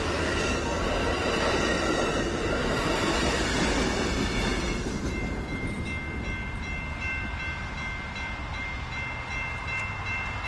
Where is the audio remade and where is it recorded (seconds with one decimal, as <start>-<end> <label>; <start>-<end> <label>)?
0.0-10.5 recorded